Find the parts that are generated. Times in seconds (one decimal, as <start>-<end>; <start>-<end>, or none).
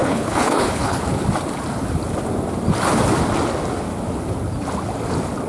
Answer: 0.0-1.0